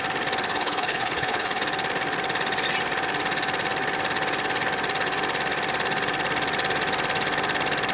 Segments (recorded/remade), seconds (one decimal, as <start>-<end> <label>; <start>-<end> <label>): 0.0-0.5 recorded; 0.5-1.6 remade; 1.6-7.9 recorded